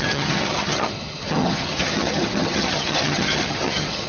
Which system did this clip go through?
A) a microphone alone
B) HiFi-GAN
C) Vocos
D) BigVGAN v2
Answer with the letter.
B